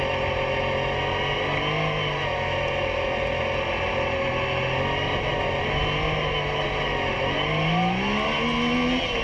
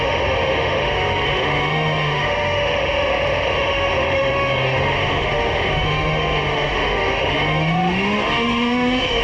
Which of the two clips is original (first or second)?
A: first